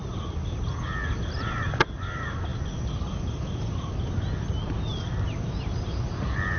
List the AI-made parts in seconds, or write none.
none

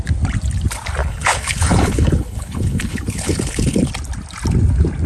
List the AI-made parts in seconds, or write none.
1.0-3.9 (codec, HILCodec)

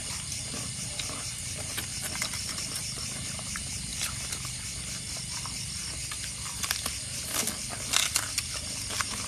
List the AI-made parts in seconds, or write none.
0.0-1.9 (vocoder, BigVGAN v2); 2.5-3.9; 8.9-9.3